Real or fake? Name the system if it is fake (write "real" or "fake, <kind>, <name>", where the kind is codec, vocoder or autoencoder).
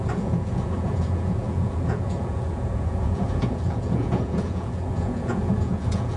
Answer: fake, vocoder, Vocos